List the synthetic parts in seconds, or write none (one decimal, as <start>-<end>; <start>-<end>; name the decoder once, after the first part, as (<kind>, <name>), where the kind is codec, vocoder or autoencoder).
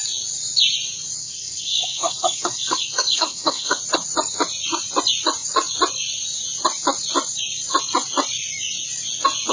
1.2-3.8 (codec, SNAC)